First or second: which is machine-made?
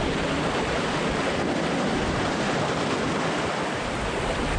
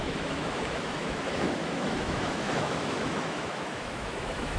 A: second